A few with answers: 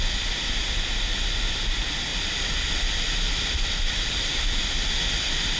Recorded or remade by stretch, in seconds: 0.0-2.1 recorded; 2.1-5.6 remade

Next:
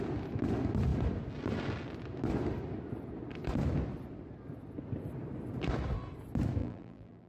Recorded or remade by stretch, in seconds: 0.0-6.6 recorded; 6.6-7.3 remade